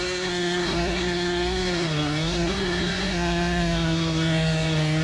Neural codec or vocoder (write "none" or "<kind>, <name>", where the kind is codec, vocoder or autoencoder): codec, SNAC